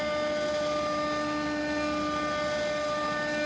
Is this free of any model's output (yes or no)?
yes